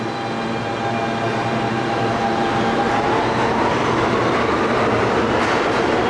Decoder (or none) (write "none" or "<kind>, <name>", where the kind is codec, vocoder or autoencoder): none